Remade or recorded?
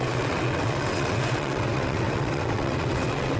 remade